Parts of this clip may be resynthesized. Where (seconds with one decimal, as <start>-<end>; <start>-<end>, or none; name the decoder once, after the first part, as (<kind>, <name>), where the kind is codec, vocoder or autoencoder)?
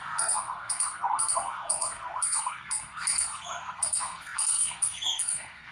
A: 0.0-5.7 (codec, SNAC)